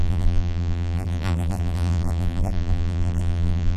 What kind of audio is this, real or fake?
fake